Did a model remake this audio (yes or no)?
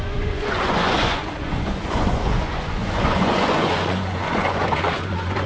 yes